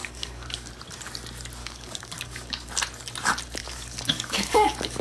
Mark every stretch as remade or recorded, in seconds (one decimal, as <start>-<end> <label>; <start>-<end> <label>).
0.0-0.7 remade; 0.7-1.6 recorded; 1.6-2.7 remade; 2.7-3.6 recorded; 3.6-5.0 remade

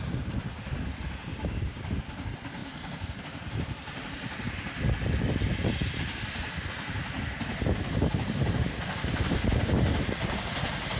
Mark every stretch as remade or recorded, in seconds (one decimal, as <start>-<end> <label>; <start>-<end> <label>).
0.0-1.3 recorded; 1.3-2.0 remade; 2.0-11.0 recorded

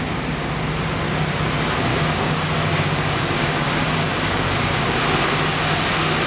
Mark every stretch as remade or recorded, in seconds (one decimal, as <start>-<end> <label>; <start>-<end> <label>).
0.0-1.9 recorded; 1.9-5.0 remade; 5.0-6.3 recorded

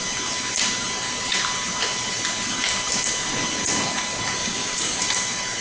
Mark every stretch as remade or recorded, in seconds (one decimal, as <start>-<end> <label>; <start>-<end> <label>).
0.0-4.4 recorded; 4.4-5.0 remade; 5.0-5.6 recorded